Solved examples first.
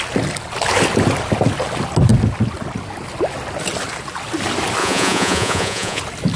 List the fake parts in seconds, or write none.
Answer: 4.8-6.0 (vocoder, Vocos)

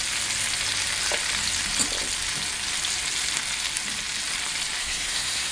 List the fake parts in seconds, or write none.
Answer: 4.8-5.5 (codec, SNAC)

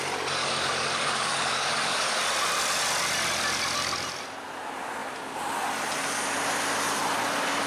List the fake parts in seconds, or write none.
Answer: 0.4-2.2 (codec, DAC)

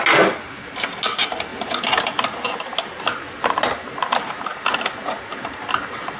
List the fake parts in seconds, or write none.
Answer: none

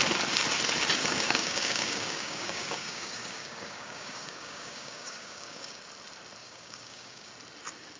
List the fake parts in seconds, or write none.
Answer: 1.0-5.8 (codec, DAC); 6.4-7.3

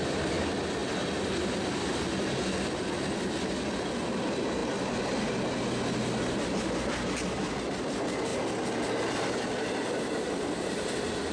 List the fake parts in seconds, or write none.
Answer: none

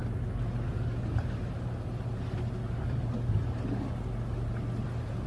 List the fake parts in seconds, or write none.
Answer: none